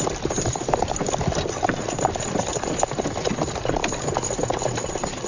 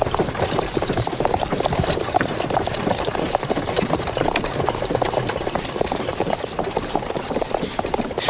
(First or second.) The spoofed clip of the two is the second